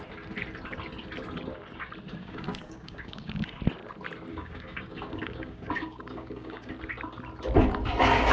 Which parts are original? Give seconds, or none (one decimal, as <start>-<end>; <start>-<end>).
0.0-2.2; 3.6-4.3; 6.7-8.3